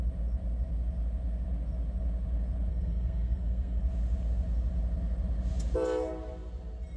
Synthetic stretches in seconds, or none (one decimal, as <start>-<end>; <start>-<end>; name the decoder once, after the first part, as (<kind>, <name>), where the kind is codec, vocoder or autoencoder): 2.7-3.8 (codec, SNAC)